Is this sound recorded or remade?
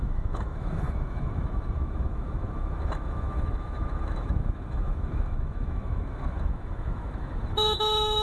remade